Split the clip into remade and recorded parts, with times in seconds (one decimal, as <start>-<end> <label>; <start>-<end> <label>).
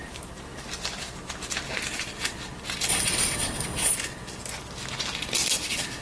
0.0-2.9 recorded; 2.9-3.9 remade; 3.9-6.0 recorded